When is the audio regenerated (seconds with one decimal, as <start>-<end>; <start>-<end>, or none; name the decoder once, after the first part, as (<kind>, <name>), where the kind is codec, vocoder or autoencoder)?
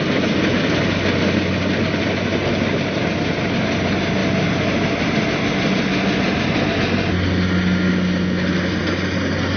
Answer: none